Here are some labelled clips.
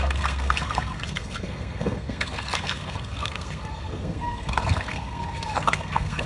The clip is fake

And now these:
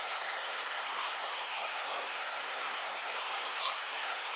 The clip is fake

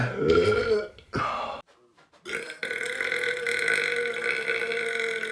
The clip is real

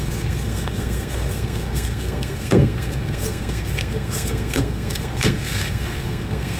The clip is fake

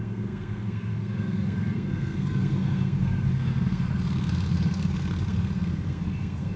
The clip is fake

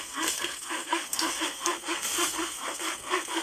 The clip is fake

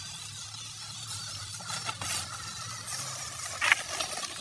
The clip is real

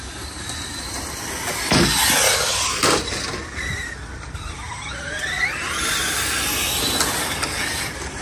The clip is real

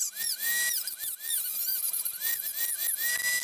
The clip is real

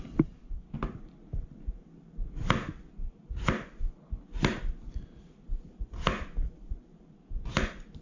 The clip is real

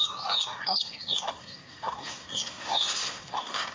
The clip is fake